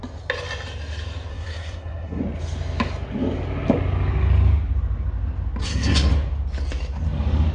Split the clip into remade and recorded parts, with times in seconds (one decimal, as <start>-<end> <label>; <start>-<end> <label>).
0.0-1.3 recorded; 1.3-2.2 remade; 2.2-5.6 recorded; 5.6-6.1 remade; 6.1-7.5 recorded